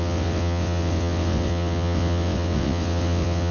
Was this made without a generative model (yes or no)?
no